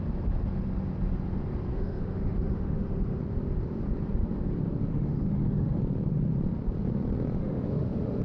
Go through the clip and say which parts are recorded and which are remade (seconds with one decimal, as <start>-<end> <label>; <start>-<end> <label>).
0.0-1.7 recorded; 1.7-3.2 remade; 3.2-4.9 recorded; 4.9-5.8 remade; 5.8-7.4 recorded; 7.4-8.2 remade